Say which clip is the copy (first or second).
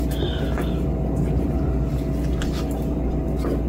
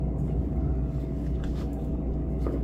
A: second